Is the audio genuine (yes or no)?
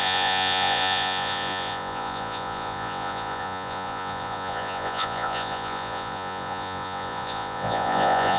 no